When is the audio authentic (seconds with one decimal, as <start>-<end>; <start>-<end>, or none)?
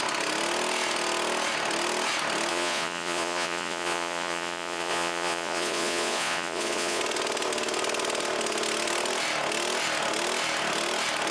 0.0-2.5; 7.0-11.3